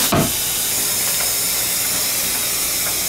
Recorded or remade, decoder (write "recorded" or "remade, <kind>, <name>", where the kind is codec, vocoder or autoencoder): recorded